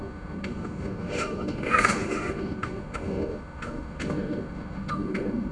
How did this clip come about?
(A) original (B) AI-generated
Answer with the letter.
B